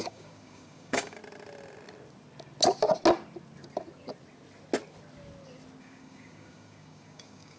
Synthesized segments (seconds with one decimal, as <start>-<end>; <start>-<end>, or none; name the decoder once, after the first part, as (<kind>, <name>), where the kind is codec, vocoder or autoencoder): 0.0-1.2 (codec, DAC); 5.8-7.6